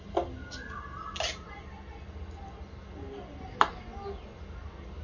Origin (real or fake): real